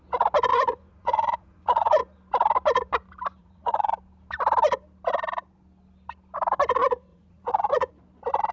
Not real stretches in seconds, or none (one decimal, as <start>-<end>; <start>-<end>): 0.5-2.0; 3.4-3.9; 7.1-7.9